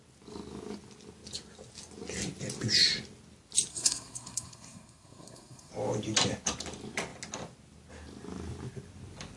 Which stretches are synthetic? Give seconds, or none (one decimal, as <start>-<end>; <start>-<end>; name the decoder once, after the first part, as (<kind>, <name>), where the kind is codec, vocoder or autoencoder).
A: 3.7-5.7 (codec, SNAC)